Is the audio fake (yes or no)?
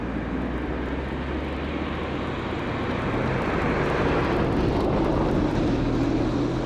no